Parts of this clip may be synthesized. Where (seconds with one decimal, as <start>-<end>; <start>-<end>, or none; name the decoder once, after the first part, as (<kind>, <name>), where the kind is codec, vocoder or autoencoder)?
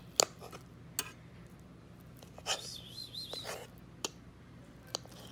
none